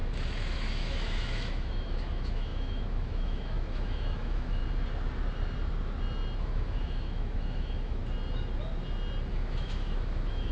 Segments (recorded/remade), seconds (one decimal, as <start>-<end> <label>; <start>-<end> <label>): 0.0-4.6 remade; 4.6-6.4 recorded; 6.4-8.0 remade; 8.0-9.3 recorded; 9.3-10.5 remade

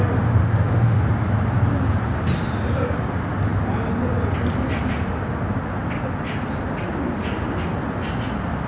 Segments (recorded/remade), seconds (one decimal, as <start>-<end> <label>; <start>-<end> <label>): 0.0-0.4 recorded; 0.4-1.0 remade; 1.0-8.7 recorded

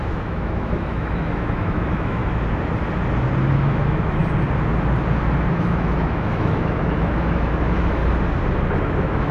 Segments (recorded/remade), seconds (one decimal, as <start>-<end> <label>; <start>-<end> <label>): 0.0-2.2 remade; 2.2-3.5 recorded; 3.5-4.2 remade; 4.2-5.5 recorded; 5.5-8.0 remade; 8.0-8.8 recorded; 8.8-9.3 remade

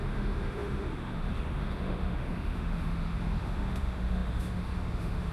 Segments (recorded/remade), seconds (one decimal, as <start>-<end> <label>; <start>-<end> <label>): 0.0-5.3 remade

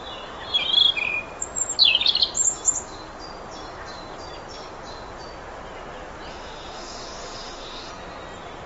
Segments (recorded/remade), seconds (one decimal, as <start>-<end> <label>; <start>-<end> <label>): 0.0-6.3 recorded; 6.3-7.9 remade; 7.9-8.7 recorded

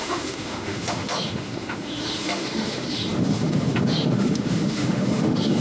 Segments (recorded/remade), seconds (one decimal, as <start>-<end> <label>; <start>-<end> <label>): 0.0-5.6 remade

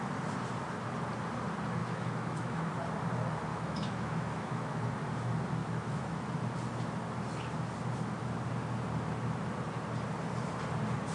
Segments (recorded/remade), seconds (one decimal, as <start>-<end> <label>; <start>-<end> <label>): 0.0-1.8 recorded; 1.8-2.7 remade; 2.7-3.5 recorded; 3.5-4.9 remade; 4.9-5.6 recorded; 5.6-6.3 remade; 6.3-11.1 recorded

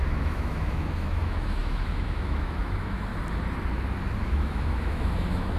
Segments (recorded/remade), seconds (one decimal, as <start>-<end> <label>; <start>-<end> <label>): 0.0-3.1 remade; 3.1-4.2 recorded; 4.2-5.6 remade